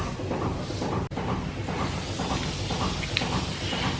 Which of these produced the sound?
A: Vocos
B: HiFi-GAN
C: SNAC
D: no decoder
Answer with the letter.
D